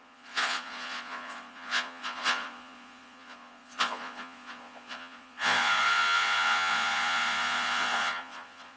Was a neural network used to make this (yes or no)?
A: yes